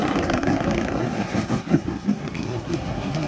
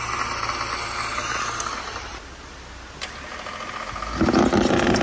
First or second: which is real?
second